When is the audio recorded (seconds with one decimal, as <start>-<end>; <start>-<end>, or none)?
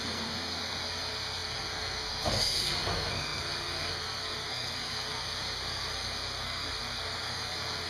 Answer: none